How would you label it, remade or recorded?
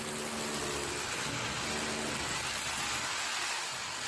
recorded